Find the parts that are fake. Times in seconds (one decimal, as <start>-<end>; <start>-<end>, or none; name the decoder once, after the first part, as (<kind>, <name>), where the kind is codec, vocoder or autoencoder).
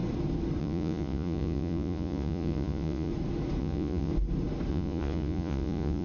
0.6-3.1 (vocoder, Vocos); 3.6-4.1; 4.7-6.0